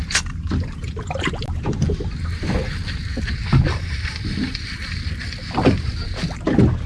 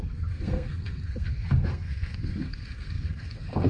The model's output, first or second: second